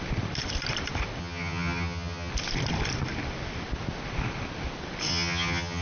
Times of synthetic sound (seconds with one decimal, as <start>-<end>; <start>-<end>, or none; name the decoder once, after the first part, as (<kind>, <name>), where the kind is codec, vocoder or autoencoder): 1.2-2.3 (vocoder, HiFi-GAN); 5.1-5.8